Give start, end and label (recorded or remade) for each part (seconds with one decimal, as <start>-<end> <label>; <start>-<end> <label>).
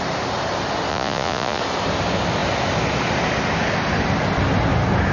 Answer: 0.0-0.9 recorded; 0.9-1.6 remade; 1.6-5.1 recorded